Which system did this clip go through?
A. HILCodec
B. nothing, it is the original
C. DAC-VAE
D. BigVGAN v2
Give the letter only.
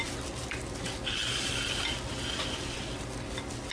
B